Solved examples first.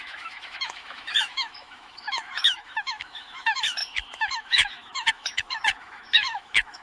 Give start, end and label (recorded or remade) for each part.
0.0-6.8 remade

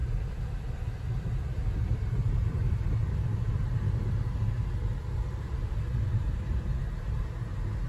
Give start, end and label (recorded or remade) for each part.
0.0-4.2 remade; 4.2-5.3 recorded; 5.3-6.8 remade; 6.8-7.9 recorded

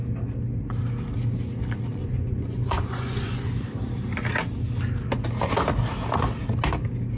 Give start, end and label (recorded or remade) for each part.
0.0-2.0 recorded; 2.0-3.5 remade; 3.5-7.2 recorded

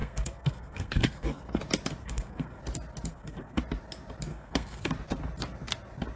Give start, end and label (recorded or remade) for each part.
0.0-1.6 remade; 1.6-2.0 recorded; 2.0-2.6 remade; 2.6-3.1 recorded; 3.1-3.6 remade; 3.6-4.3 recorded; 4.3-4.9 remade; 4.9-6.2 recorded

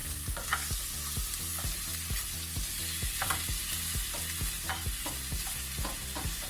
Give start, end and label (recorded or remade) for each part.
0.0-0.5 remade; 0.5-6.5 recorded

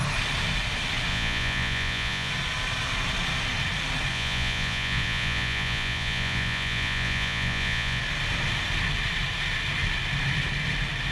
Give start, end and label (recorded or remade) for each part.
0.0-1.1 recorded; 1.1-2.3 remade; 2.3-4.1 recorded; 4.1-8.0 remade; 8.0-11.1 recorded

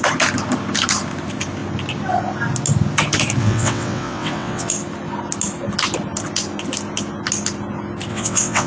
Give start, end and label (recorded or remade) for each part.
0.0-3.4 recorded; 3.4-4.7 remade; 4.7-8.1 recorded; 8.1-8.7 remade

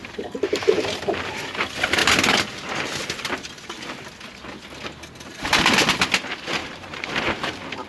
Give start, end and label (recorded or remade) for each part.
0.0-0.9 remade; 0.9-6.6 recorded; 6.6-7.9 remade